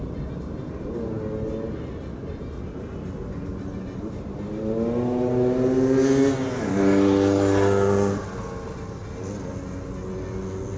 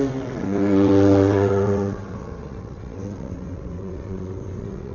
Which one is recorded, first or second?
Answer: first